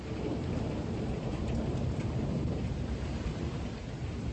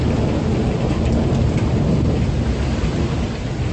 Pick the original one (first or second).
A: second